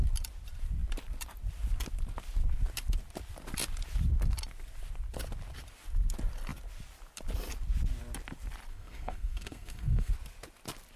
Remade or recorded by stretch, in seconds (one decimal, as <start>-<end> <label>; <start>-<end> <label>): 0.0-8.7 recorded; 8.7-10.1 remade; 10.1-11.0 recorded